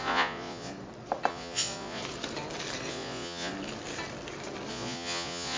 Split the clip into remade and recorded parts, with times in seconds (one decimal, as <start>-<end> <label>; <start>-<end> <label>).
0.0-0.7 remade; 0.7-1.3 recorded; 1.3-2.0 remade; 2.0-2.9 recorded; 2.9-3.5 remade; 3.5-4.7 recorded; 4.7-5.6 remade